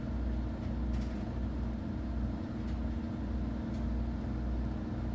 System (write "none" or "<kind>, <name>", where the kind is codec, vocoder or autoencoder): none